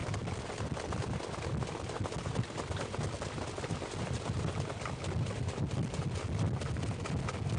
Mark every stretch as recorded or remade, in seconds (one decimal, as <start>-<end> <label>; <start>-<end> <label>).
0.0-7.6 recorded